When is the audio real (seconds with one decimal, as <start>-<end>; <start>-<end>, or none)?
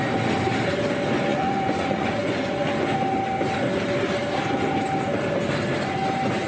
0.0-1.3; 2.7-6.5